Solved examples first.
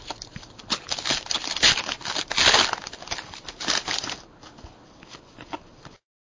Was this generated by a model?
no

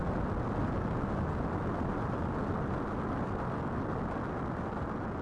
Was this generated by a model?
no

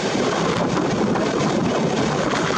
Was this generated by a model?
no